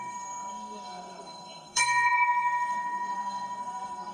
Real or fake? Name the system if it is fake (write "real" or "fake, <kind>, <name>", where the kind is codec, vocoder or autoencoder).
fake, codec, SNAC